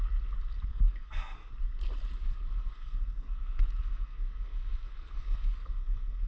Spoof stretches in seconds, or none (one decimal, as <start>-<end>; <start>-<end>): 0.7-1.5; 2.2-6.3